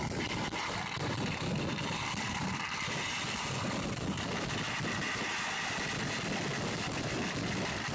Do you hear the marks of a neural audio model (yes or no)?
no